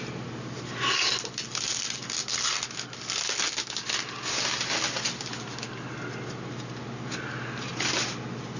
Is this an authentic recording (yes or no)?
yes